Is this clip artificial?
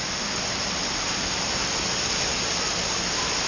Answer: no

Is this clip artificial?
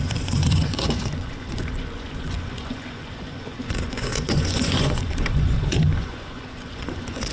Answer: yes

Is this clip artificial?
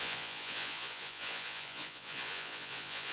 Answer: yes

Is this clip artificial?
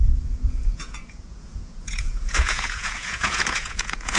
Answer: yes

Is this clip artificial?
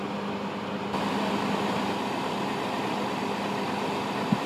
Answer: no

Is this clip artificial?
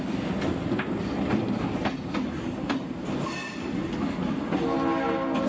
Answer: no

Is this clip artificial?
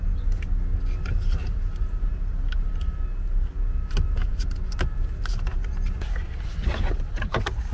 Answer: no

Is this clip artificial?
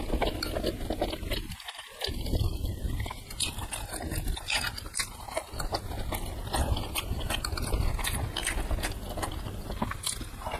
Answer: no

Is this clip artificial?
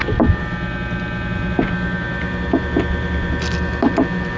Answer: no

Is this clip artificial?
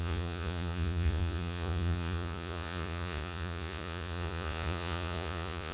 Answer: yes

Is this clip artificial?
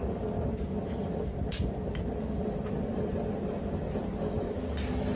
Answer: no